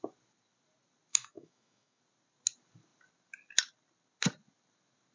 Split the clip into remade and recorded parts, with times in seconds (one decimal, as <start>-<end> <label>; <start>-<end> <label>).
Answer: 0.0-1.1 recorded; 1.1-2.0 remade; 2.0-5.1 recorded